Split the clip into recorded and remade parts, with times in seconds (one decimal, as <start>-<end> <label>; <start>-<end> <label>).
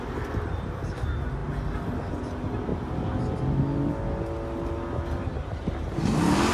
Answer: 0.0-6.5 recorded